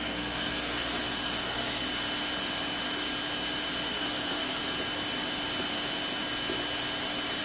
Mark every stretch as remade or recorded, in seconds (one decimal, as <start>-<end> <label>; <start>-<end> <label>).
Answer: 0.0-1.8 remade; 1.8-3.9 recorded; 3.9-4.6 remade; 4.6-7.4 recorded